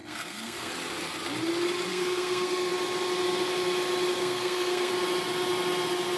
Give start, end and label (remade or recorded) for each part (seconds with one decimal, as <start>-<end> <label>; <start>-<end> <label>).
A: 0.0-0.7 remade; 0.7-1.9 recorded; 1.9-2.7 remade; 2.7-4.2 recorded; 4.2-4.9 remade; 4.9-6.2 recorded